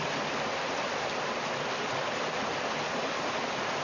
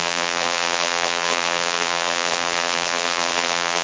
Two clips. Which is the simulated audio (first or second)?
second